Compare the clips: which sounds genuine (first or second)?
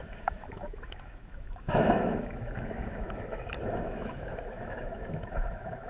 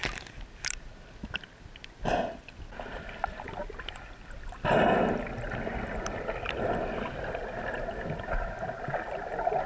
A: second